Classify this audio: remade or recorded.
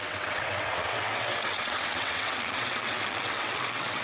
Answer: remade